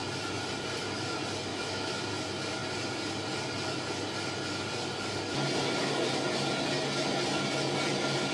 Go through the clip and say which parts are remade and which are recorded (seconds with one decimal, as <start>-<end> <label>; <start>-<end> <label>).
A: 0.0-1.5 recorded; 1.5-2.1 remade; 2.1-8.3 recorded